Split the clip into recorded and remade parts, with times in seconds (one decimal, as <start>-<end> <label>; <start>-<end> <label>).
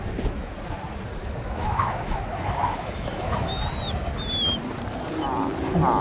0.0-1.2 recorded; 1.2-3.6 remade; 3.6-6.0 recorded